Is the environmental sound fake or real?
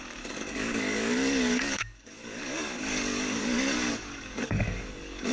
fake